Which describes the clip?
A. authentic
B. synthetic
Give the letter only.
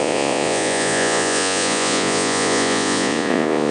B